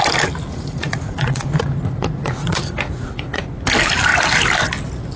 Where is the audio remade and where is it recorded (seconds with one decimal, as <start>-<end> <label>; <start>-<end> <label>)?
0.0-0.5 recorded; 0.5-3.5 remade; 3.5-5.2 recorded